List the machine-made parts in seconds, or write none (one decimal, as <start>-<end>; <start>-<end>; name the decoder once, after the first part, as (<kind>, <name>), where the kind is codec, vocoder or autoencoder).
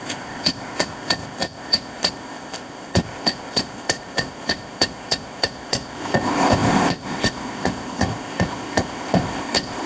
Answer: 0.0-9.9 (codec, ZipCodec)